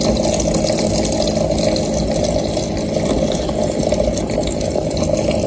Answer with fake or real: real